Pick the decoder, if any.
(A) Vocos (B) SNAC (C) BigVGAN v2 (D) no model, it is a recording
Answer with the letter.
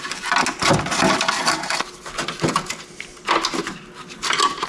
D